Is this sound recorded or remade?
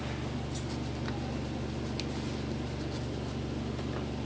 recorded